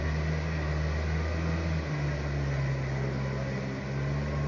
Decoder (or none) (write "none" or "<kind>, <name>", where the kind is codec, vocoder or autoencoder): none